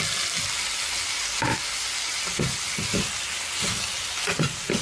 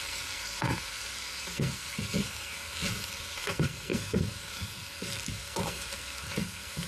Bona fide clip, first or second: first